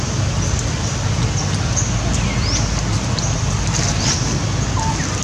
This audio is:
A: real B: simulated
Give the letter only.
A